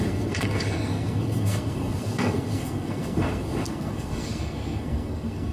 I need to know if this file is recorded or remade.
remade